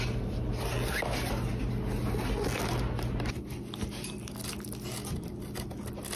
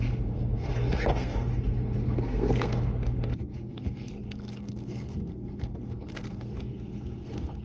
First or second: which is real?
first